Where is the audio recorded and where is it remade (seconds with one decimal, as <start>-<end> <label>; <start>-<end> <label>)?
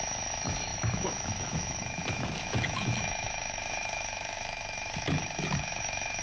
0.0-6.2 remade